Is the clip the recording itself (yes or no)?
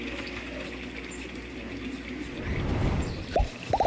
yes